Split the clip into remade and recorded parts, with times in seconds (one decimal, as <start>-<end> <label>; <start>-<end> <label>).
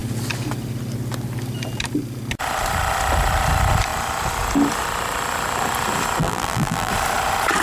0.0-6.2 recorded; 6.2-6.9 remade; 6.9-7.6 recorded